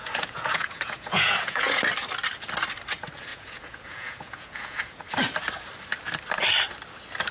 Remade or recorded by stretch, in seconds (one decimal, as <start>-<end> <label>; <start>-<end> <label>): 0.0-1.8 remade; 1.8-3.3 recorded; 3.3-5.0 remade; 5.0-7.3 recorded

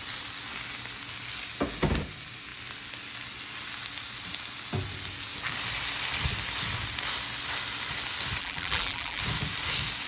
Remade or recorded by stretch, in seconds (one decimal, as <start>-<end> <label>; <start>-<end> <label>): 0.0-8.4 recorded; 8.4-9.2 remade; 9.2-10.1 recorded

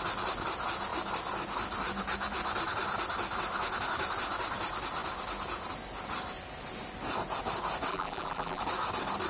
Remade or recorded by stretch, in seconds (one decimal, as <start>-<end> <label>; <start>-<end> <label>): 0.0-7.9 recorded; 7.9-8.6 remade; 8.6-9.3 recorded

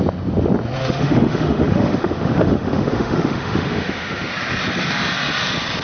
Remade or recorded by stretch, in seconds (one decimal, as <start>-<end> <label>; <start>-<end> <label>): 0.0-0.8 recorded; 0.8-4.3 remade; 4.3-5.8 recorded

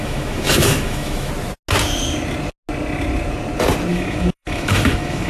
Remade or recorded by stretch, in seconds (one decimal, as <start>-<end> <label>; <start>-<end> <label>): 0.0-1.3 remade; 1.3-3.9 recorded; 3.9-5.3 remade

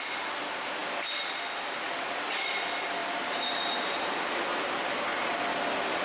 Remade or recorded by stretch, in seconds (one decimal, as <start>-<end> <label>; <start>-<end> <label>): 0.0-3.0 recorded; 3.0-4.2 remade; 4.2-5.1 recorded; 5.1-6.0 remade

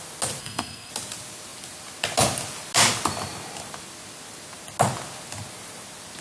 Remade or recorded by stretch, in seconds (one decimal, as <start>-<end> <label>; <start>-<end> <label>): 0.0-0.4 recorded; 0.4-0.9 remade; 0.9-6.2 recorded